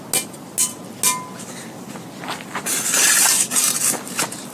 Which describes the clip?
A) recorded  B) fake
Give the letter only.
A